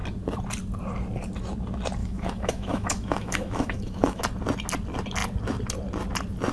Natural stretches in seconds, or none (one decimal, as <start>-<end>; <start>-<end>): 0.0-2.0; 4.2-6.5